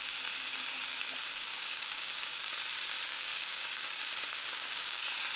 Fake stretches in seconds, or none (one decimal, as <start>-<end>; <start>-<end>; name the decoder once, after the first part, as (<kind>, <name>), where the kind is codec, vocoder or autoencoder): 1.5-2.4 (codec, DAC); 3.1-4.0; 4.4-5.0